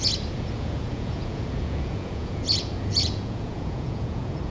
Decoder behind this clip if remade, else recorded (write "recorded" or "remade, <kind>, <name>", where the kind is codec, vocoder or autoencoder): remade, vocoder, Vocos